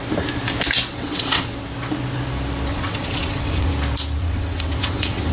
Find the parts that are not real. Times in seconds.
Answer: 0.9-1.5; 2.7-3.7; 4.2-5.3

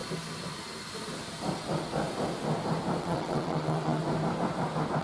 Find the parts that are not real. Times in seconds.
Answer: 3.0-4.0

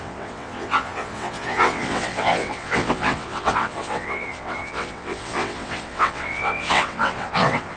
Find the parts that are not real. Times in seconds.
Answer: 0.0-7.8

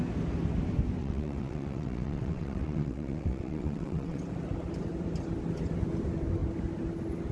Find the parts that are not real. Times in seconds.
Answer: 1.0-4.2

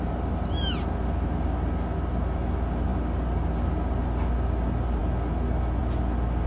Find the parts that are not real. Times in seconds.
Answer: none